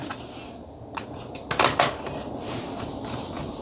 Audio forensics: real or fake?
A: real